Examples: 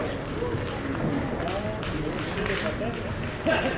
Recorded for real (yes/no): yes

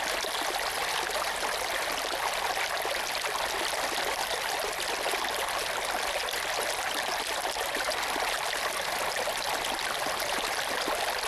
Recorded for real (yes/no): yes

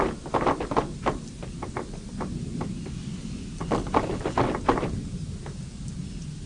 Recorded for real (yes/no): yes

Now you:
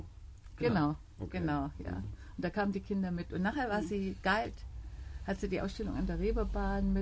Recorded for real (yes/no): yes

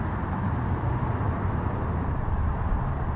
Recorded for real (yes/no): yes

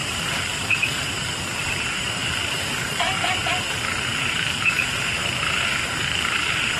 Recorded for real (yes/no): no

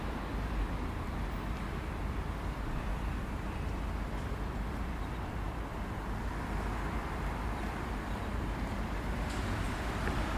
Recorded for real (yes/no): no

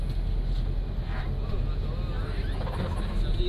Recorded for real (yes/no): yes